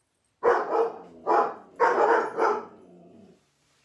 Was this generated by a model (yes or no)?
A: no